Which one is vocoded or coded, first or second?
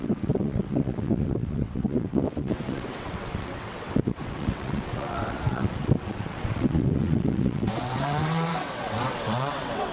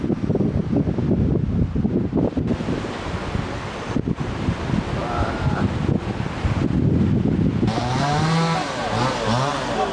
first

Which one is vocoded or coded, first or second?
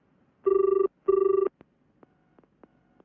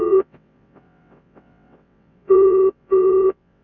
second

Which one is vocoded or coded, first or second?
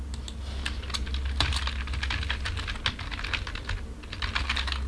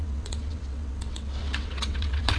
second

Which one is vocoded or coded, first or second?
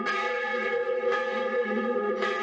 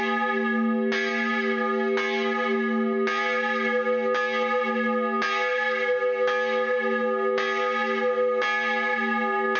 first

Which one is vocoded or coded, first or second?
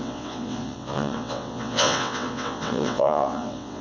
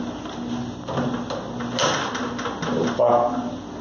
first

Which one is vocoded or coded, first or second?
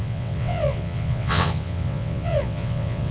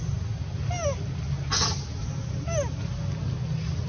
first